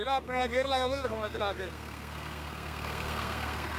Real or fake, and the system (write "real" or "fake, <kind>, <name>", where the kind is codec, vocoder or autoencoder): fake, codec, SNAC